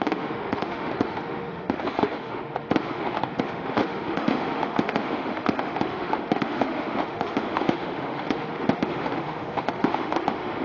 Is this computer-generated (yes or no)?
yes